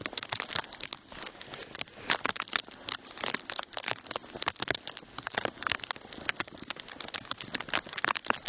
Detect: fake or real real